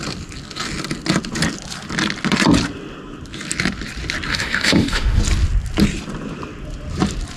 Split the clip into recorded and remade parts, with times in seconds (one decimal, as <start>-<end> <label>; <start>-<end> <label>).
0.0-4.3 recorded; 4.3-5.2 remade; 5.2-7.4 recorded